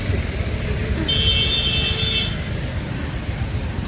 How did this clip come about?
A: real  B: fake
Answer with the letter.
A